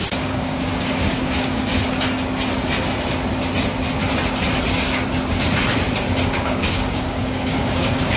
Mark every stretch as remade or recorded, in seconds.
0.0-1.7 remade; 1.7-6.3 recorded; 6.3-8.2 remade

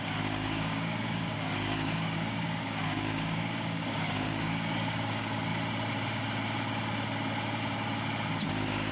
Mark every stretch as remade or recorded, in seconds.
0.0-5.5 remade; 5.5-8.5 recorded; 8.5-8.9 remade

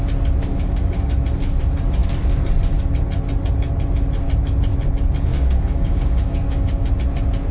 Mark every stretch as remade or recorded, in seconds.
0.0-0.5 recorded; 0.5-1.1 remade; 1.1-5.3 recorded; 5.3-6.9 remade; 6.9-7.5 recorded

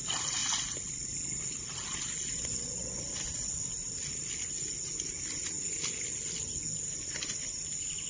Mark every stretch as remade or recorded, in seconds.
0.0-8.1 recorded

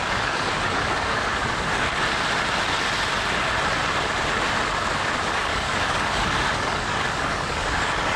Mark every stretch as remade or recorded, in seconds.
0.0-1.3 remade; 1.3-5.2 recorded; 5.2-8.2 remade

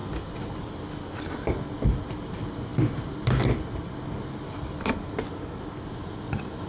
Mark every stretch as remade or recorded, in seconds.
0.0-6.7 recorded